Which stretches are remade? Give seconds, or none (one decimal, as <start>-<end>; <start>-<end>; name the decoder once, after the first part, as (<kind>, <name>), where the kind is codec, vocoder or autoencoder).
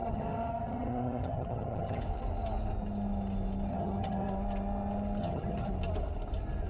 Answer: 0.0-2.0 (vocoder, HiFi-GAN); 3.7-4.3; 5.2-5.7